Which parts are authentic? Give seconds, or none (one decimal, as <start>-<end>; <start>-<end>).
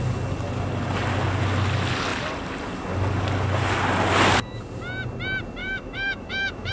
0.0-5.6